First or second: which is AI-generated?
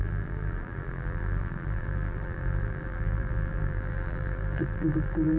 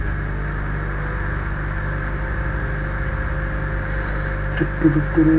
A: first